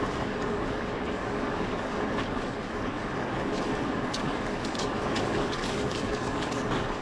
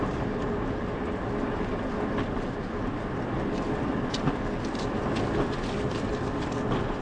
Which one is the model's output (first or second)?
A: first